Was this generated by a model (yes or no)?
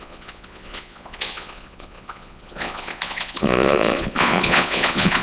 yes